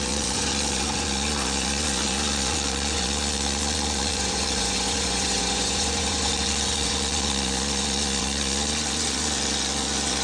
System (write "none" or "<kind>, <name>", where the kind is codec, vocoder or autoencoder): vocoder, Vocos